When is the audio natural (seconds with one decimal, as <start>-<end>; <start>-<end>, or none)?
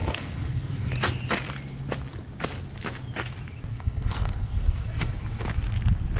0.9-3.7; 5.1-6.2